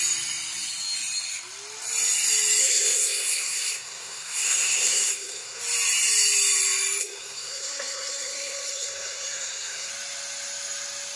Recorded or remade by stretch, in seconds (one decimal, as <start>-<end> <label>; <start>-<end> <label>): 0.0-2.6 recorded; 2.6-5.6 remade; 5.6-7.0 recorded; 7.0-9.9 remade; 9.9-11.2 recorded